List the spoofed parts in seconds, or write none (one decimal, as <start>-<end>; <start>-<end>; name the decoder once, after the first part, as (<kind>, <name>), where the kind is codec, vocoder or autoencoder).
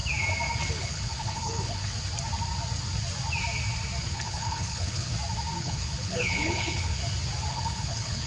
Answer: 0.7-1.9 (codec, HILCodec); 4.1-5.1; 5.6-7.0; 7.5-8.3